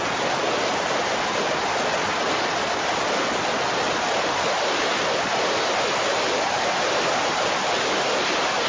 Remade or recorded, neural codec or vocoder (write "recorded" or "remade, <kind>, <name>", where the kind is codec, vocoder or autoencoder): recorded